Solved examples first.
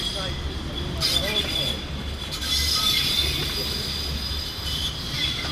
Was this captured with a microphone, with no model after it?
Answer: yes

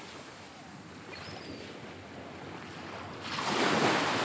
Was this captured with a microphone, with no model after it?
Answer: yes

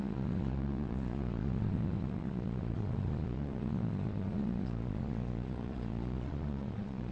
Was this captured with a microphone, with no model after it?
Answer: no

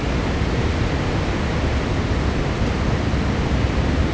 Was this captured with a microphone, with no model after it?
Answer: yes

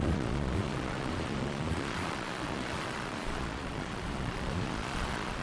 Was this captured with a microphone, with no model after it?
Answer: no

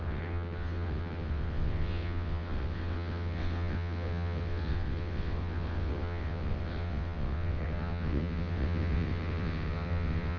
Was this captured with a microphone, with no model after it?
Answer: no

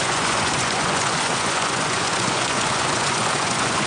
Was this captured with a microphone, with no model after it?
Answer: no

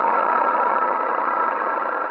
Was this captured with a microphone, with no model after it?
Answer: no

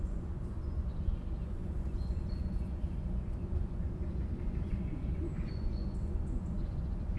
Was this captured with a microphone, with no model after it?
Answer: no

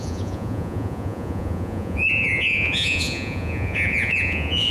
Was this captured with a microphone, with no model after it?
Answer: no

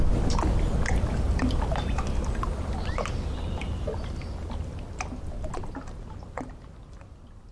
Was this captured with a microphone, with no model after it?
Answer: yes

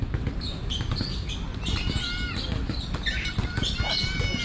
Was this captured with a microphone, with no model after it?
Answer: yes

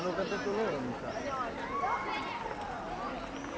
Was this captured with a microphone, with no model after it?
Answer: yes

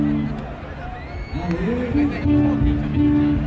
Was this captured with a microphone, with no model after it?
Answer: yes